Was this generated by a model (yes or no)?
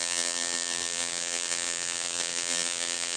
yes